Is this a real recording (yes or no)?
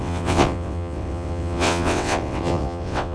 no